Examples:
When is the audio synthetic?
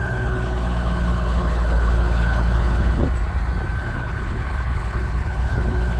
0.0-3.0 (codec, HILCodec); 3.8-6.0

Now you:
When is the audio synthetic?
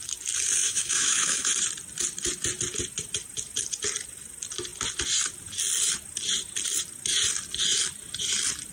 0.6-1.5 (autoencoder, DAC-VAE)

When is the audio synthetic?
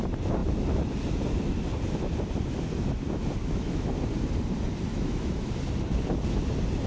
3.4-3.9 (autoencoder, DAC-VAE); 4.9-5.5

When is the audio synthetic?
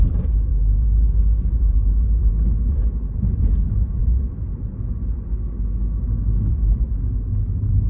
0.5-2.3 (vocoder, BigVGAN v2); 2.8-3.3; 4.0-4.7